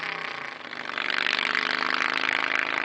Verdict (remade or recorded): recorded